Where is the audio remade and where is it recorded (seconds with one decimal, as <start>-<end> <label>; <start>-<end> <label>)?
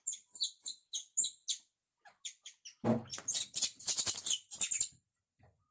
0.0-5.7 recorded